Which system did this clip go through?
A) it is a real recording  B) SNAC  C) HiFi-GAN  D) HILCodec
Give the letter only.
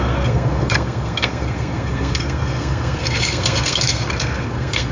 B